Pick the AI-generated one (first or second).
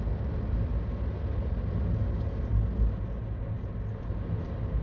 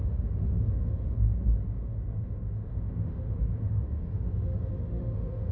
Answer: second